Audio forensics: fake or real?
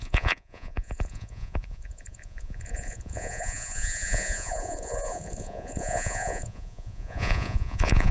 fake